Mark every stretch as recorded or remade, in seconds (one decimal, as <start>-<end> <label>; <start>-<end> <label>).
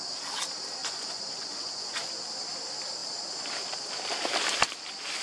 0.0-0.8 recorded; 0.8-2.0 remade; 2.0-5.2 recorded